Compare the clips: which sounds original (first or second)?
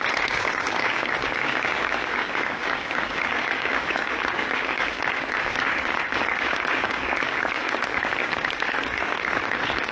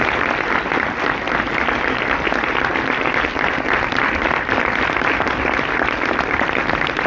second